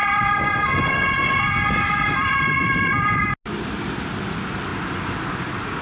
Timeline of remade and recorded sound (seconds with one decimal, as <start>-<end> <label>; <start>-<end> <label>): 0.0-0.8 remade; 0.8-2.2 recorded; 2.2-3.2 remade; 3.2-4.7 recorded; 4.7-5.2 remade; 5.2-5.8 recorded